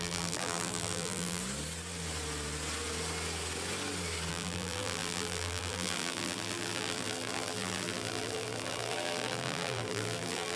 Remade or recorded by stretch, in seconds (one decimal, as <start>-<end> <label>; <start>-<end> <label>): 0.0-1.4 remade; 1.4-4.3 recorded; 4.3-10.6 remade